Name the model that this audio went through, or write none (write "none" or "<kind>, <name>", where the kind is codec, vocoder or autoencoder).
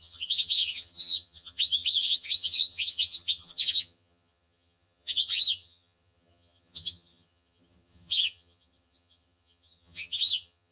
vocoder, HiFi-GAN